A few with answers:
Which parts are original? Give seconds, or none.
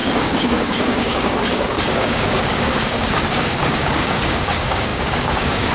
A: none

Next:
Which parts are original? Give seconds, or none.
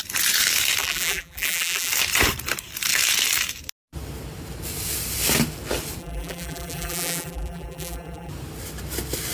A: 0.0-0.8; 1.9-6.0; 8.3-9.3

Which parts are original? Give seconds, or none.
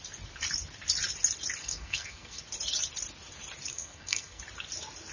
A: 0.0-1.6; 2.4-3.7; 4.4-5.1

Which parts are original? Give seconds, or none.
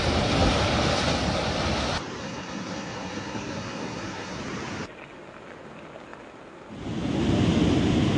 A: 0.0-2.2; 4.4-8.2